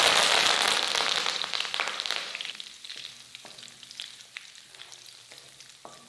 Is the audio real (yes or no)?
yes